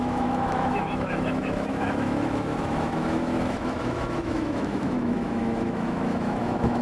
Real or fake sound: fake